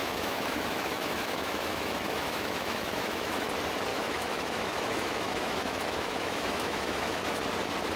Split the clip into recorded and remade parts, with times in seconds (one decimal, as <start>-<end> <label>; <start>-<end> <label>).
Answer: 0.0-3.5 remade; 3.5-3.9 recorded; 3.9-7.4 remade; 7.4-8.0 recorded